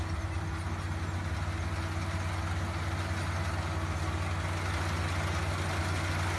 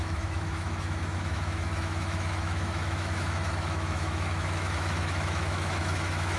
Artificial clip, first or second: second